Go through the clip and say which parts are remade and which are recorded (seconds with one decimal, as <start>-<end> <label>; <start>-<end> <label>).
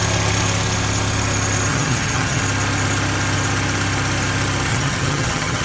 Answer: 0.0-1.7 recorded; 1.7-2.4 remade; 2.4-4.7 recorded; 4.7-5.6 remade